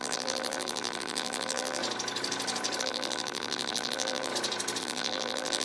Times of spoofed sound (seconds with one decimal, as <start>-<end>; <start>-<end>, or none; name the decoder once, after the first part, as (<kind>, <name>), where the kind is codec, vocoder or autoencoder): 0.0-1.8 (vocoder, BigVGAN v2); 2.8-4.3; 4.8-5.6

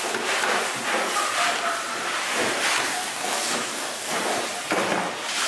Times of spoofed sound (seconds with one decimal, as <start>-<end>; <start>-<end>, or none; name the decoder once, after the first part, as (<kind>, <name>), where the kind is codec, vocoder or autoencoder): 2.8-4.1 (codec, DAC)

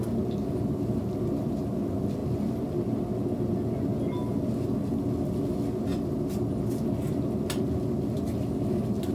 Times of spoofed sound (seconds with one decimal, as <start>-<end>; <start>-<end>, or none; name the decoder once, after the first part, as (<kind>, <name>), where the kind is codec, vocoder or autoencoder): none

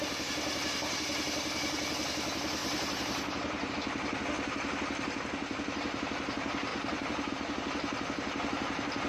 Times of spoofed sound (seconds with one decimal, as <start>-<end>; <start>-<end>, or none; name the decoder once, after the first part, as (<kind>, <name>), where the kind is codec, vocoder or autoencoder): 2.6-3.7 (vocoder, BigVGAN v2); 6.7-7.3